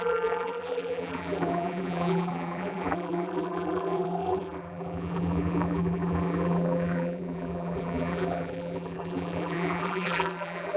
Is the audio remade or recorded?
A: remade